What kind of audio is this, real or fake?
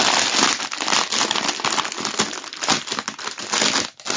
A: real